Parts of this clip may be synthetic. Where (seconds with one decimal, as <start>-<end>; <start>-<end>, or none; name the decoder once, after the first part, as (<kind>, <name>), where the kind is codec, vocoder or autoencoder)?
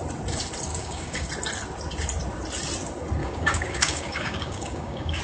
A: 0.7-1.3 (codec, DAC); 3.2-5.2